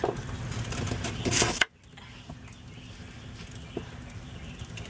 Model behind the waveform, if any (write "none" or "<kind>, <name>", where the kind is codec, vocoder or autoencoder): none